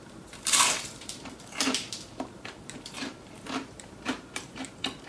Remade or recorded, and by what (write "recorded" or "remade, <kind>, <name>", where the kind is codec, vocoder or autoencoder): remade, vocoder, BigVGAN v2